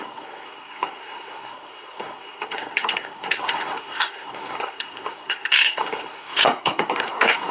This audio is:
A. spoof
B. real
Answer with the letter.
A